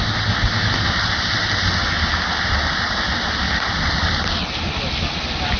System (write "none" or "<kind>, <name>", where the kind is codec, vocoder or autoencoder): none